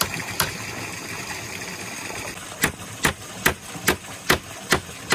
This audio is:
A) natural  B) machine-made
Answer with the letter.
A